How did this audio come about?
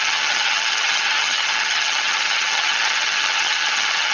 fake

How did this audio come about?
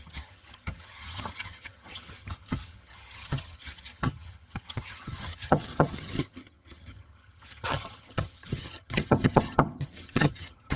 fake